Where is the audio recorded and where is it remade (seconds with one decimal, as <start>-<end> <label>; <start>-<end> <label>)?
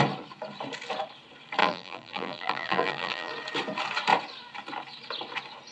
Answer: 0.0-1.6 recorded; 1.6-3.3 remade; 3.3-5.7 recorded